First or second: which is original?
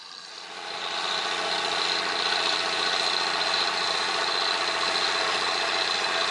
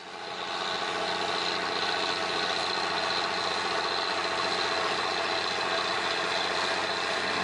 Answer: second